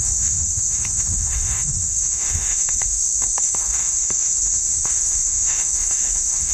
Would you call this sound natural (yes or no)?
no